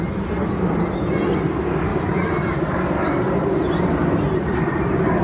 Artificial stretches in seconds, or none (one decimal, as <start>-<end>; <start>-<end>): 1.9-5.2